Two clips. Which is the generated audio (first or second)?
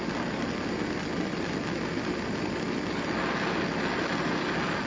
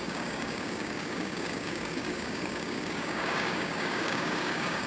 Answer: second